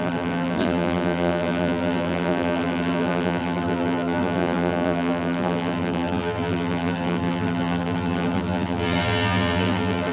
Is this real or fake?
fake